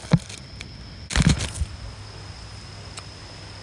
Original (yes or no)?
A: yes